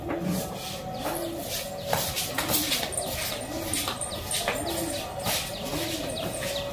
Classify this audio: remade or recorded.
recorded